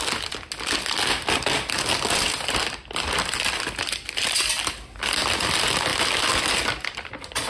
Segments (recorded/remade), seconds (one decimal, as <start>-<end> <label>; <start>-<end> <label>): 0.0-7.5 recorded